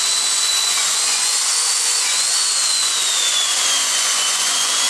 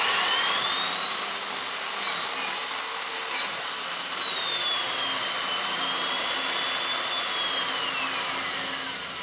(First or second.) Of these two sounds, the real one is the second